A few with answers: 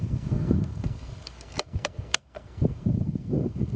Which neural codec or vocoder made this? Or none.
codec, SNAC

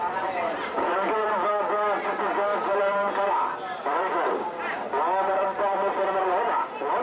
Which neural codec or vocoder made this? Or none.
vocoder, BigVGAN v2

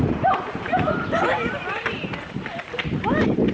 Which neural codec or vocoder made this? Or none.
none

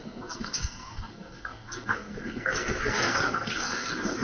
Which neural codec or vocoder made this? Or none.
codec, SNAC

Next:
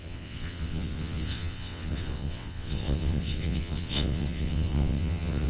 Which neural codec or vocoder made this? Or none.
vocoder, WaveNeXt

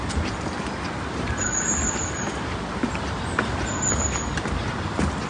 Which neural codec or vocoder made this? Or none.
none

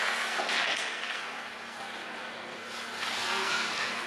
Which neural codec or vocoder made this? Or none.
codec, SNAC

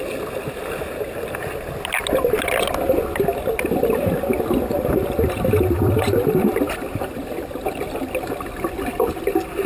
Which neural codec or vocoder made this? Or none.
none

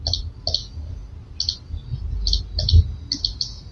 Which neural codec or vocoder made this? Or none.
none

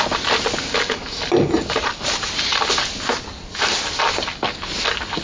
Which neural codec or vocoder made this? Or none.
none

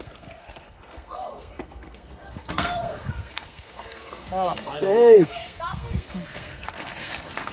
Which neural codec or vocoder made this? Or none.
codec, SNAC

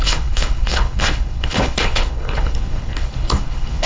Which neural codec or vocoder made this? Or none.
codec, HILCodec